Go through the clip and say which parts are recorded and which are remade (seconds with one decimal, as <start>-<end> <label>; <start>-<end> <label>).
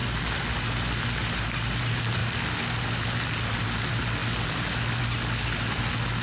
0.0-6.2 recorded